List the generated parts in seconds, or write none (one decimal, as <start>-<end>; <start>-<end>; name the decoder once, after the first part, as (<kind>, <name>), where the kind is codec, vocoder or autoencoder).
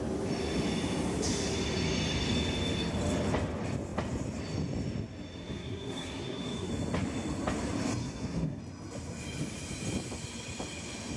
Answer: 5.4-6.7 (codec, SNAC); 8.0-8.6